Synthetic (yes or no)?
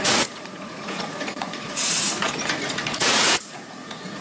yes